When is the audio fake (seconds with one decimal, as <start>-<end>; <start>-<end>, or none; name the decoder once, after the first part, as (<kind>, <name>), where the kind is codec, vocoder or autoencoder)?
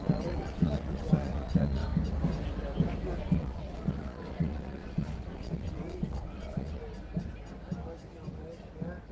0.0-1.8 (vocoder, WaveNeXt); 3.2-6.8